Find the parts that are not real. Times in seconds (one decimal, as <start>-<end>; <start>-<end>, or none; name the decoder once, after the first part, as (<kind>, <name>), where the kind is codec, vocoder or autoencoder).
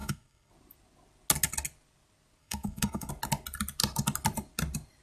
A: 0.0-0.5 (codec, SNAC); 2.4-3.1